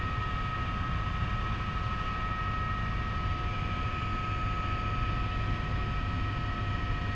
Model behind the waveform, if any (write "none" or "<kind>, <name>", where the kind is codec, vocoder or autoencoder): none